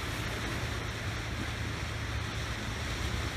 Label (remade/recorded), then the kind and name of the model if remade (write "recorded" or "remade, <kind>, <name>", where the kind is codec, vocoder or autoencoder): recorded